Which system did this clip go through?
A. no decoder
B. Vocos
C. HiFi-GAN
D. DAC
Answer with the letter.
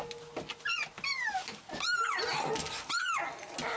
A